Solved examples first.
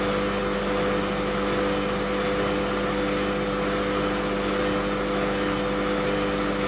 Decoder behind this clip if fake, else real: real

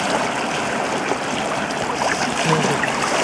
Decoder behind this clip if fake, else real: real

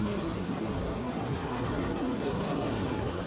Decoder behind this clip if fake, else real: fake, codec, SNAC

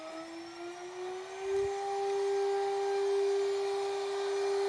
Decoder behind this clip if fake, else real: real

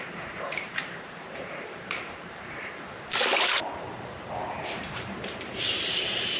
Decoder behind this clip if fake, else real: fake, vocoder, BigVGAN v2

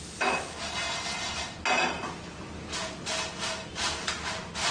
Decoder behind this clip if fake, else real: real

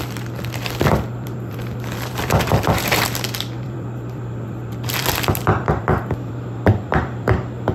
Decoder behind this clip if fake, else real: fake, vocoder, BigVGAN v2